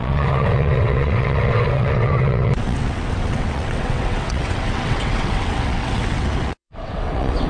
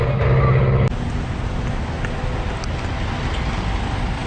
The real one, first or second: second